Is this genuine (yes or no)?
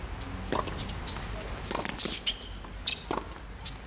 yes